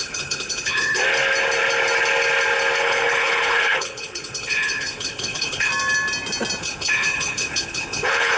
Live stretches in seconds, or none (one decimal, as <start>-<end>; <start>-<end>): 1.0-2.8; 5.7-6.6